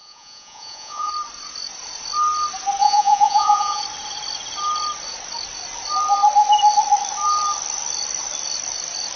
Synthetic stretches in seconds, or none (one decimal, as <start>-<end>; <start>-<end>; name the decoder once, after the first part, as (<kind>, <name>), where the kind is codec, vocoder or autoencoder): 0.0-1.1 (vocoder, Vocos); 2.8-3.8